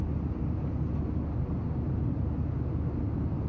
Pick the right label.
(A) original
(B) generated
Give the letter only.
A